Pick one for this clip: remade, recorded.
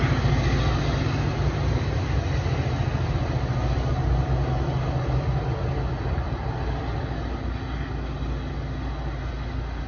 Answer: recorded